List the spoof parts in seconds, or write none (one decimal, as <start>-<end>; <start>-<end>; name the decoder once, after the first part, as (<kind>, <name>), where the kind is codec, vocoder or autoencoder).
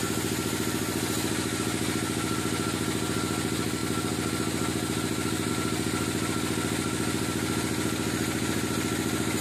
none